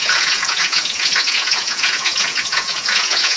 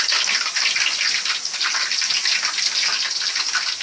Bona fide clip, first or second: second